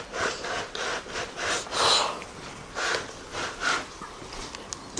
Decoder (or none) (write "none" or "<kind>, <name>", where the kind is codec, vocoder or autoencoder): none